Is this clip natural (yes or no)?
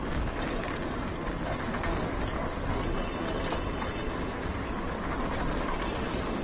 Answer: yes